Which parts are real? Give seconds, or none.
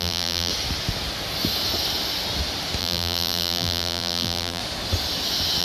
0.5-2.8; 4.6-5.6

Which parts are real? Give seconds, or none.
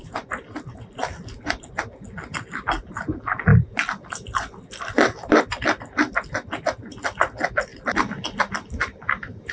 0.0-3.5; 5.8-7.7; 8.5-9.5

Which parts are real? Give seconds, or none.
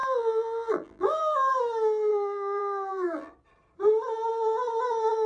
1.5-2.1; 3.3-5.3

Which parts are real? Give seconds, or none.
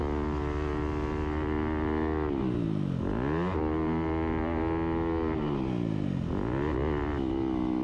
0.0-7.8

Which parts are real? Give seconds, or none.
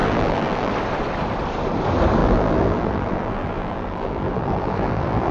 0.7-2.2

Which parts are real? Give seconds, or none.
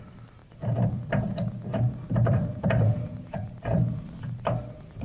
0.0-0.4; 1.1-1.7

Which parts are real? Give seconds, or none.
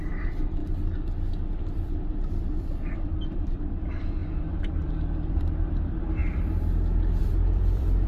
0.6-1.3